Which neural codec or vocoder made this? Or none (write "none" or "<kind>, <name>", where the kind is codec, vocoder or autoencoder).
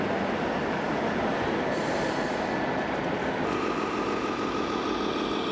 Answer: none